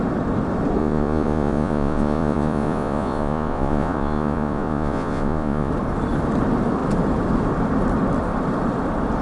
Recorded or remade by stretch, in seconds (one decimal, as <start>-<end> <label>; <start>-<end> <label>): 0.0-0.8 recorded; 0.8-5.7 remade; 5.7-9.2 recorded